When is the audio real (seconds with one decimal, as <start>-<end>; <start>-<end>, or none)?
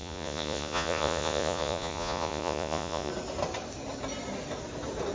3.1-5.1